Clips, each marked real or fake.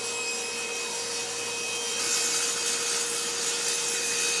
real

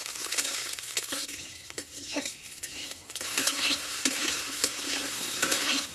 fake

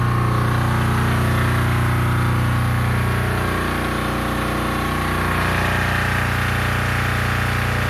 real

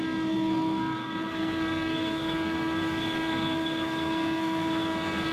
fake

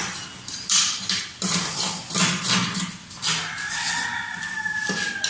real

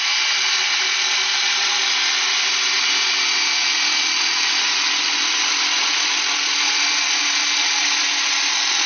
real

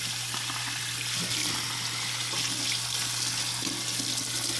fake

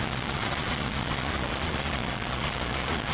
fake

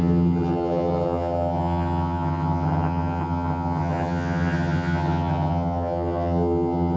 fake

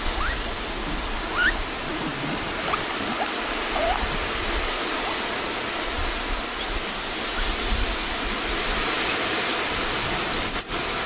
real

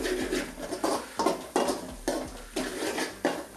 real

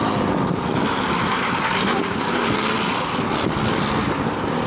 real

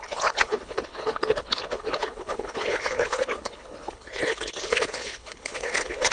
fake